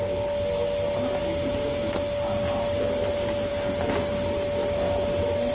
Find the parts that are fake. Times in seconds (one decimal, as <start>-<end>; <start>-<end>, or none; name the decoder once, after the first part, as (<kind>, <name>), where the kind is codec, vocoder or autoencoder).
none